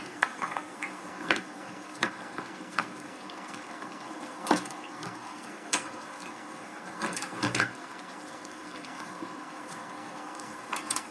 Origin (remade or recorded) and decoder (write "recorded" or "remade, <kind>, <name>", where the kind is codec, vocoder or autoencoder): remade, codec, SNAC